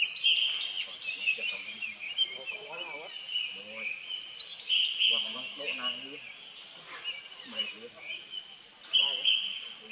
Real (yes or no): yes